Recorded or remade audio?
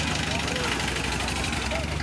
recorded